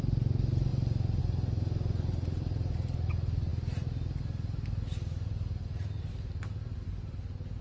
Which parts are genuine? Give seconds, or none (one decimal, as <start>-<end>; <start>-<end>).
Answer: 0.0-7.6